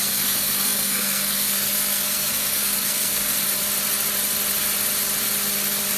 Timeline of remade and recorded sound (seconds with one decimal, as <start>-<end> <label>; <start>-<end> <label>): 0.0-3.4 remade; 3.4-6.0 recorded